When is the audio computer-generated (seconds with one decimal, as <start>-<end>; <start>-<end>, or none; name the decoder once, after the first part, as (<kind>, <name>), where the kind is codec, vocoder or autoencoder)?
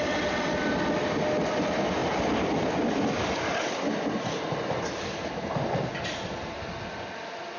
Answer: none